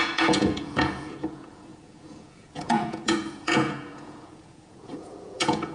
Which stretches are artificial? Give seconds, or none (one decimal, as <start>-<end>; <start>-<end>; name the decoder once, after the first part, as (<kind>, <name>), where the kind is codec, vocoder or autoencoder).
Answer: 0.0-5.7 (vocoder, Vocos)